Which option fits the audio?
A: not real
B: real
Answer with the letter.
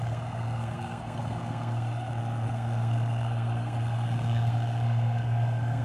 A